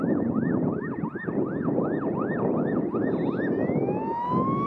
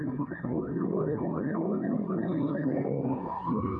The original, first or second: first